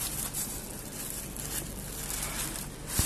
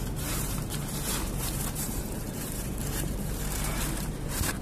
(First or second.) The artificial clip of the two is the second